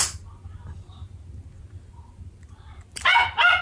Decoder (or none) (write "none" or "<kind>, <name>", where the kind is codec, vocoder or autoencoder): none